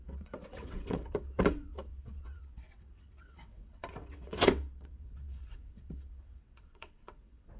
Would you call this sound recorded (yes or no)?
no